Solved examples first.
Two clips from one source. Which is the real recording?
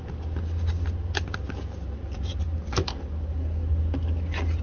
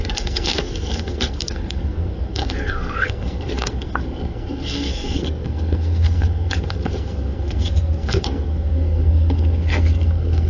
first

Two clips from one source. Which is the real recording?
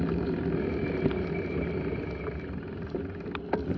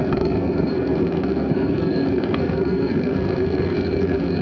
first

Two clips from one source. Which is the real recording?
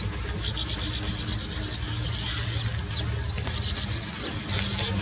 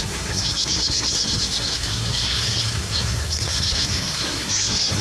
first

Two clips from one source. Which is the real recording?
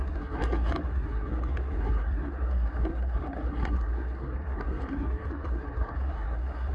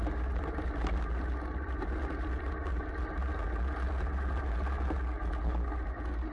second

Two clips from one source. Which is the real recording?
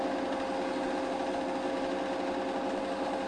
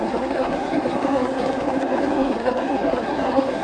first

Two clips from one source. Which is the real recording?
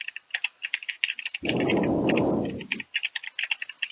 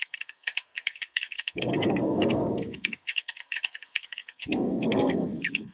first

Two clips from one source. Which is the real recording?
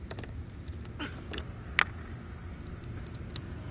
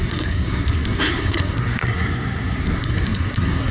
first